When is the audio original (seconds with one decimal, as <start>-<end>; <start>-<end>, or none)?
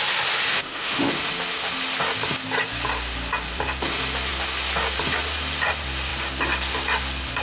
0.0-0.5; 1.1-7.4